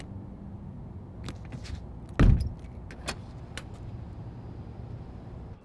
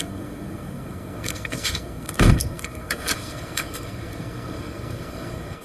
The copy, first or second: second